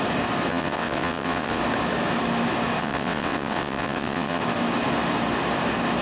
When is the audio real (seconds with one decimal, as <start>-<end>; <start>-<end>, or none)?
0.0-0.5; 1.6-2.8; 4.4-6.0